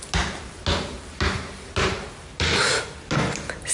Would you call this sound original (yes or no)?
yes